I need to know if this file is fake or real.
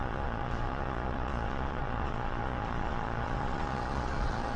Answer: fake